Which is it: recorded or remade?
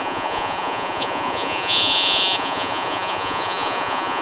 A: remade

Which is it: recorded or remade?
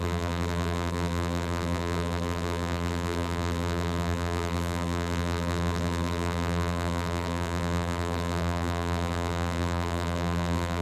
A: remade